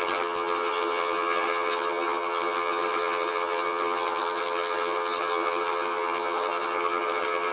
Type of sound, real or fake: fake